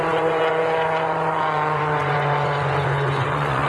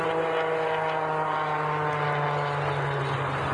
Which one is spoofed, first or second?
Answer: first